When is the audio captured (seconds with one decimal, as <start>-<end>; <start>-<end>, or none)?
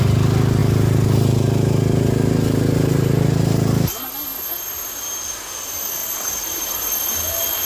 0.0-7.6